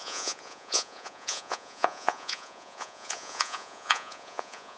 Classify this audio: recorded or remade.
remade